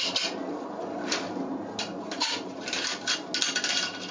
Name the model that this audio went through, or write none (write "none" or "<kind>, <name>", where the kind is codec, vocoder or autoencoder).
none